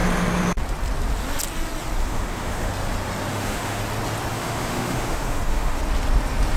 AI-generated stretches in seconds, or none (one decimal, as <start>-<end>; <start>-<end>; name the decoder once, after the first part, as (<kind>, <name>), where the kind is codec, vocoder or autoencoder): 2.0-2.7 (autoencoder, DAC-VAE); 3.3-3.8; 4.3-5.8